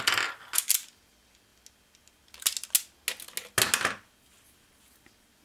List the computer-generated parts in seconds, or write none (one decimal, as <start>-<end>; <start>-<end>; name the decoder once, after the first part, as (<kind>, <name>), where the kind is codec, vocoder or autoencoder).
none